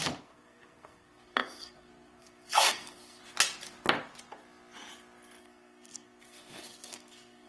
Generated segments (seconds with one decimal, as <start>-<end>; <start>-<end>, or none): 0.0-3.2; 5.4-7.5